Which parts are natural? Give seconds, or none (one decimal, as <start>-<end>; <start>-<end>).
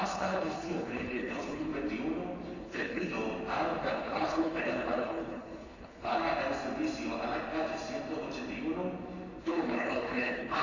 1.7-2.6; 3.1-3.9; 6.2-9.4